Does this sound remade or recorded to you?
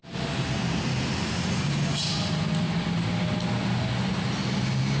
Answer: recorded